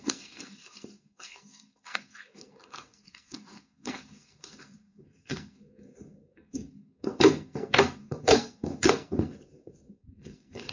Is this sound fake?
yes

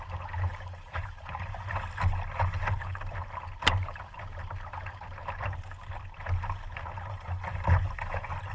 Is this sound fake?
no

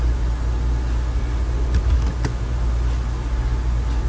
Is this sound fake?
no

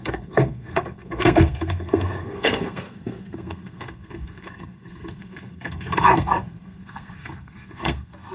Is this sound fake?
yes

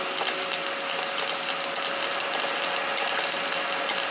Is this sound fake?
no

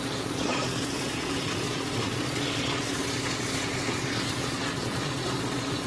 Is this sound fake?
yes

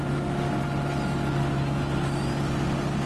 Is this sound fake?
no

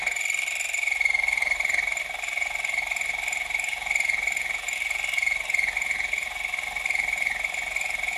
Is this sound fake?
no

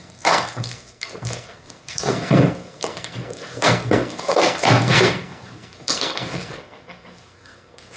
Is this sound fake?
yes